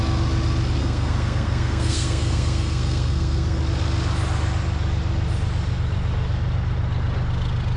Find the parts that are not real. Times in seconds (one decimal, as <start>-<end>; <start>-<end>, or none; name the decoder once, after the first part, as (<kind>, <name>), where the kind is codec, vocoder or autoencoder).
0.8-3.6 (codec, SNAC)